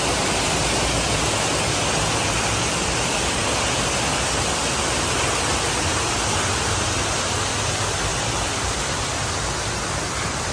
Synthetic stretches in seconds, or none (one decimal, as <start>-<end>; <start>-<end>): 8.1-9.1